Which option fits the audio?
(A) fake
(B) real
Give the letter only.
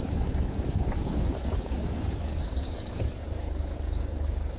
A